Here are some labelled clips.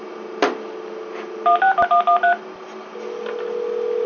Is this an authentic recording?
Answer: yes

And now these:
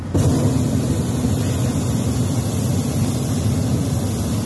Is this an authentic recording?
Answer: yes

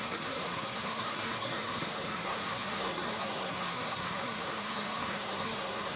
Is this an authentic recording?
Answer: no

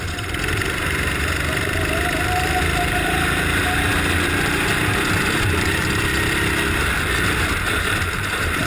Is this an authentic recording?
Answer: yes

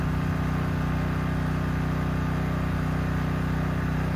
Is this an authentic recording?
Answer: yes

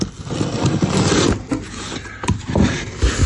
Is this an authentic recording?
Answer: yes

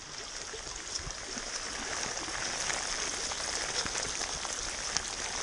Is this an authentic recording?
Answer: yes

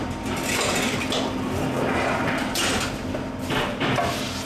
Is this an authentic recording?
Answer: yes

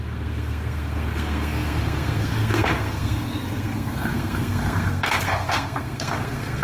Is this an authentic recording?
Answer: no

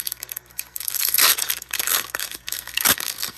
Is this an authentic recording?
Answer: no